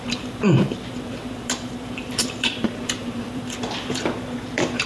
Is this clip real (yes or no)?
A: no